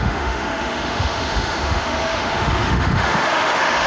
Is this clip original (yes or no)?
no